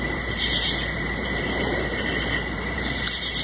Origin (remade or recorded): remade